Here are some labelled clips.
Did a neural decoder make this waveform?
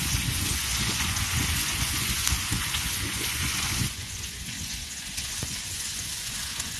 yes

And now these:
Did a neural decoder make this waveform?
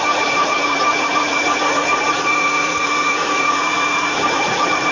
yes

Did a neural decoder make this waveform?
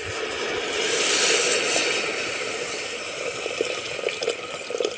no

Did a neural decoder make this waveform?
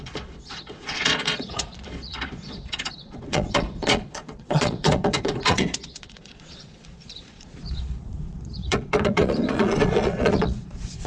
yes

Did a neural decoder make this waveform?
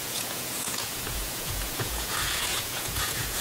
yes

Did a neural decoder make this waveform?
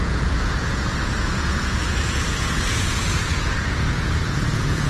yes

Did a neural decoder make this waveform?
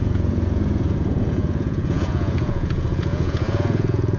yes